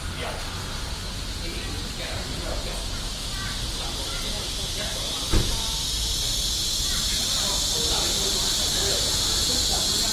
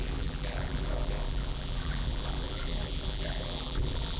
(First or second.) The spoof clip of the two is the second